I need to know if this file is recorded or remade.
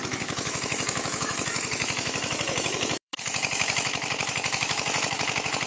remade